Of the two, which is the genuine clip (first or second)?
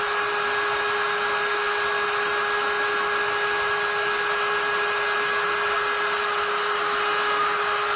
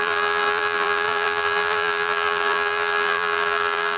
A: first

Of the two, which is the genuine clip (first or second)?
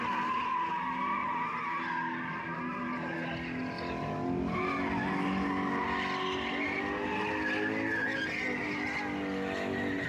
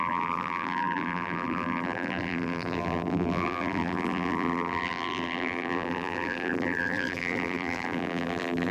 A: first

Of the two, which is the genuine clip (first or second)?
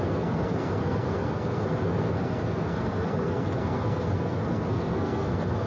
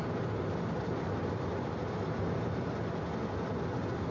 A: second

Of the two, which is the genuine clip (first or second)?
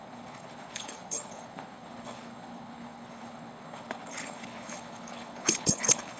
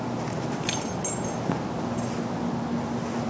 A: second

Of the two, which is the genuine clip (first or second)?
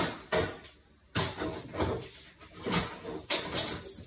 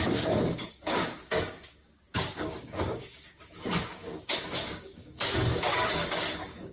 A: first